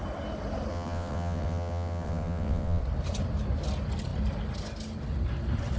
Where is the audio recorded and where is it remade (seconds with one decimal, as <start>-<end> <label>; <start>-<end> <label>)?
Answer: 0.0-0.7 recorded; 0.7-2.8 remade; 2.8-5.8 recorded